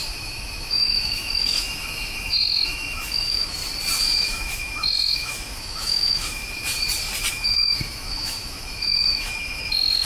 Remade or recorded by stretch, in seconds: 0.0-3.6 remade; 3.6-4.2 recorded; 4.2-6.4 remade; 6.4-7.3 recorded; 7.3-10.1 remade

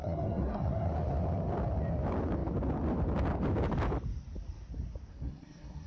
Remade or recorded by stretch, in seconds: 0.0-0.9 remade; 0.9-5.1 recorded; 5.1-5.9 remade

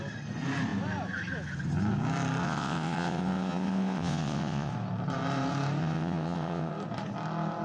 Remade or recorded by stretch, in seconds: 0.0-2.4 recorded; 2.4-4.7 remade; 4.7-5.8 recorded; 5.8-6.7 remade; 6.7-7.6 recorded

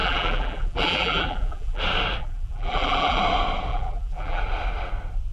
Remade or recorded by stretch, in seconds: 0.0-1.8 remade; 1.8-2.2 recorded; 2.2-3.2 remade; 3.2-3.7 recorded; 3.7-4.4 remade; 4.4-5.3 recorded

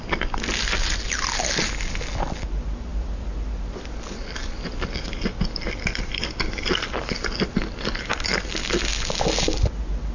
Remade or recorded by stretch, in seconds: 0.0-10.1 recorded